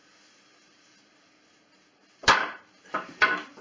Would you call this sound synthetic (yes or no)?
no